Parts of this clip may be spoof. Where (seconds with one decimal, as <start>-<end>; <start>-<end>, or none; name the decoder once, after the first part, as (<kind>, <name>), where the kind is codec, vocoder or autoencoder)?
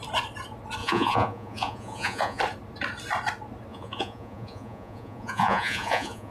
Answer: 0.8-2.4 (vocoder, Vocos); 3.7-6.3